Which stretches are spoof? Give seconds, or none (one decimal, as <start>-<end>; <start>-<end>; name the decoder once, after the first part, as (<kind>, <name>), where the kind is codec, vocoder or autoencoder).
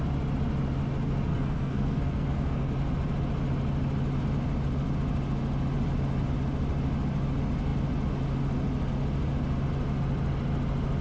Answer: 1.3-2.7 (codec, SNAC)